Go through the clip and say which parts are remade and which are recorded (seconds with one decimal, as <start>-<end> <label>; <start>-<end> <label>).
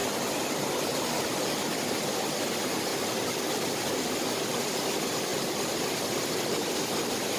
0.0-2.9 recorded; 2.9-3.6 remade; 3.6-7.4 recorded